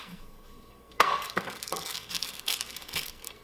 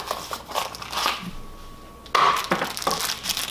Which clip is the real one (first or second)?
second